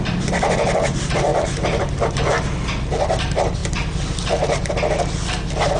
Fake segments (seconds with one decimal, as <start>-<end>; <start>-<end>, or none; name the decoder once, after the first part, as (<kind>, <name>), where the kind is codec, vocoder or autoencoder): 1.3-2.2 (vocoder, BigVGAN v2); 3.6-4.7